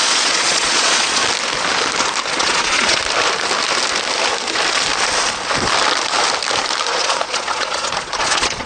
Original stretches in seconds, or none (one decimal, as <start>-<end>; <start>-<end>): 1.2-2.3; 3.0-7.0